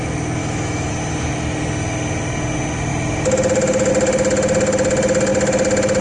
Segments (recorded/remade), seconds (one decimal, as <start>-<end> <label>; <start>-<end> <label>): 0.0-0.4 recorded; 0.4-0.9 remade; 0.9-6.0 recorded